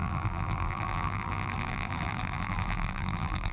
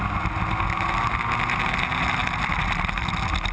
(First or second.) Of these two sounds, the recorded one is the second